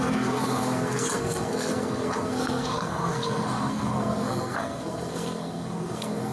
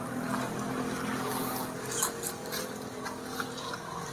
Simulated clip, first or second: first